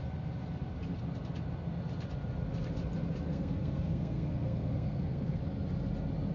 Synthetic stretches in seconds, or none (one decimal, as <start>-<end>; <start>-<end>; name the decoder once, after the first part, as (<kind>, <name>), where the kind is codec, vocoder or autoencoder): 3.3-5.4 (codec, SNAC)